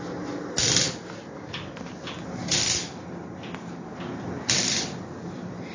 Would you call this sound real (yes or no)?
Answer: yes